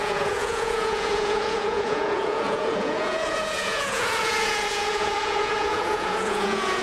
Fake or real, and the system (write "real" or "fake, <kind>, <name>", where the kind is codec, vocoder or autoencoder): fake, vocoder, Vocos